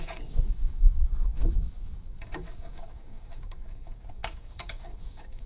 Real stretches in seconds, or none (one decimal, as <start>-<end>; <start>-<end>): none